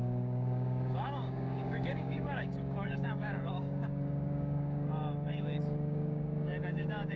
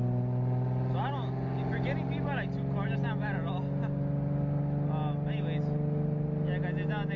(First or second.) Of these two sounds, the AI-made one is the first